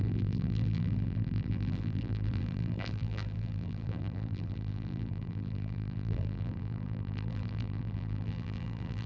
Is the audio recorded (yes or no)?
no